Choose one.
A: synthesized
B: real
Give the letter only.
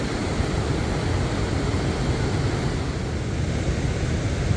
B